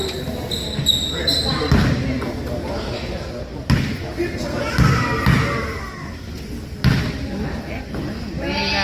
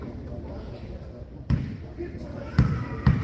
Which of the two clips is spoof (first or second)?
second